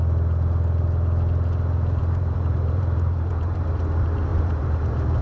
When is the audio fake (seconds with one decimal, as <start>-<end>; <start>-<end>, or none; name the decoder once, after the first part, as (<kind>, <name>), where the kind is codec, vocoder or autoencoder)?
2.0-3.7 (vocoder, BigVGAN v2); 4.3-5.2